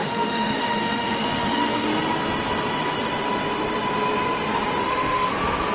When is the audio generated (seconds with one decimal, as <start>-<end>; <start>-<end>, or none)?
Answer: 0.0-2.0; 4.8-5.3